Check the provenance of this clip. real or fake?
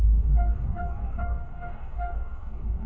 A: fake